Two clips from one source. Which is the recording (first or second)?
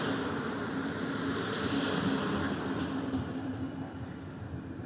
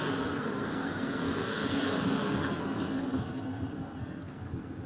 first